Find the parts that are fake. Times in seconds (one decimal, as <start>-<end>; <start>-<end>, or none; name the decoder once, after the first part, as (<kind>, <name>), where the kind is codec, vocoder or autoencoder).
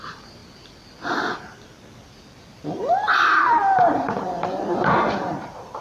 0.0-0.4 (vocoder, BigVGAN v2); 3.9-5.8